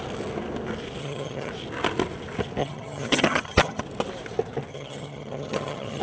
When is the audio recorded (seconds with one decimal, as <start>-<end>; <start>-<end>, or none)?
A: 0.0-1.0; 1.5-2.6; 3.8-4.7

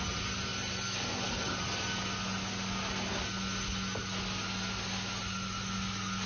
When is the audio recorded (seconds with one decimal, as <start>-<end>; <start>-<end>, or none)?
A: 0.0-6.3

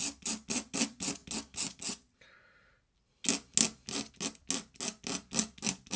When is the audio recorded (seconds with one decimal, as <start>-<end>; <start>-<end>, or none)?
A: 0.0-6.0

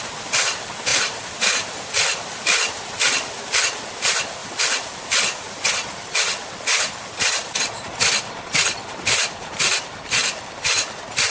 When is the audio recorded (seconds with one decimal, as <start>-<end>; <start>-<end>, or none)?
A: 0.0-0.9; 3.6-4.4; 5.7-7.4; 9.8-11.3

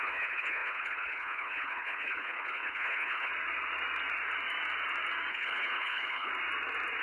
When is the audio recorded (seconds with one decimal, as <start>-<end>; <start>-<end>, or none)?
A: 3.3-5.3; 6.3-7.0